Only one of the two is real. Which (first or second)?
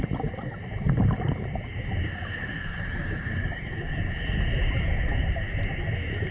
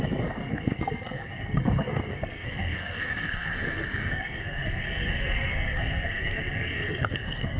first